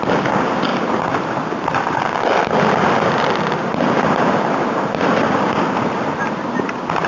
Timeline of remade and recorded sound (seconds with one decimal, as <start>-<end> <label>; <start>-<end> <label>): 0.0-0.7 recorded; 0.7-3.1 remade; 3.1-7.1 recorded